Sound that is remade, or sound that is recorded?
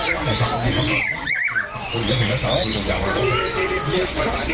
remade